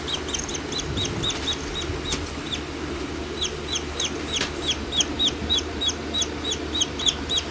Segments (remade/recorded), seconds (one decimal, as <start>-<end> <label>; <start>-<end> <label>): 0.0-5.4 recorded; 5.4-6.0 remade; 6.0-7.5 recorded